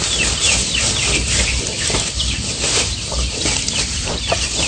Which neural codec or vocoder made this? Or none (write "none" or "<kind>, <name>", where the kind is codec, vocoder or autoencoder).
none